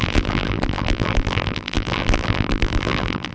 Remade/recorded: remade